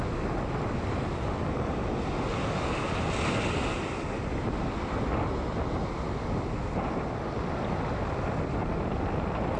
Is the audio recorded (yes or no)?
yes